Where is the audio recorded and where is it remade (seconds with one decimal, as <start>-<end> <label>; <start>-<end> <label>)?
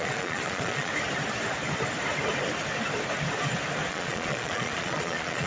0.0-0.9 remade; 0.9-3.9 recorded; 3.9-5.5 remade